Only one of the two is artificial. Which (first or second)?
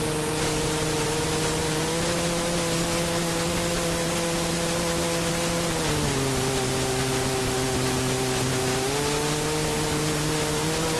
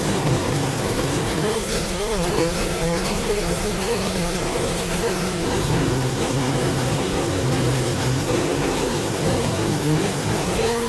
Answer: second